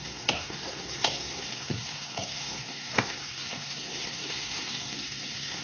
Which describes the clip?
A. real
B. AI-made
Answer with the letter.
B